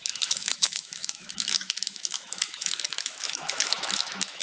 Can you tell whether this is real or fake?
fake